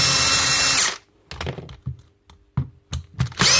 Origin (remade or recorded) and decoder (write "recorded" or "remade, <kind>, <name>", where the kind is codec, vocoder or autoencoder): recorded